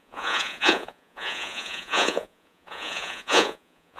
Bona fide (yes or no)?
no